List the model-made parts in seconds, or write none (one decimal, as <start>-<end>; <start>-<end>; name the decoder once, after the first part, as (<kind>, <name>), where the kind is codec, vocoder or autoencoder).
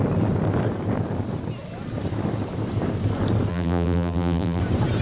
3.5-4.6 (vocoder, BigVGAN v2)